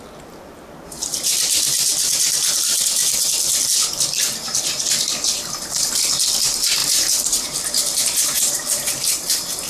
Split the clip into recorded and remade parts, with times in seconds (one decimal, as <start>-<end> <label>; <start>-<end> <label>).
0.0-6.8 recorded; 6.8-8.9 remade; 8.9-9.7 recorded